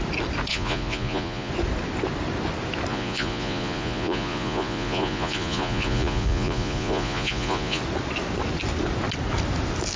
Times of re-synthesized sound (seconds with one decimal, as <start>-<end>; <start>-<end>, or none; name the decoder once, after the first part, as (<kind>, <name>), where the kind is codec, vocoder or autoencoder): 0.5-1.5 (vocoder, Vocos); 2.9-7.8